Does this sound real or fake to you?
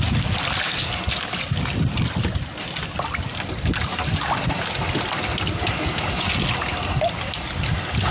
real